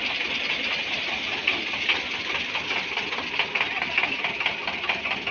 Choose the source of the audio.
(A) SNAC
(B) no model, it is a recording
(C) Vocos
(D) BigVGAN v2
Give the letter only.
B